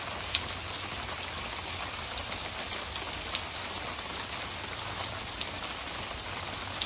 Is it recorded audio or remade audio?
recorded